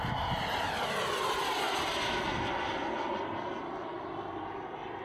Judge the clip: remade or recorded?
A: recorded